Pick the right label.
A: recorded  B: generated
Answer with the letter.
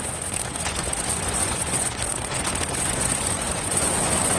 B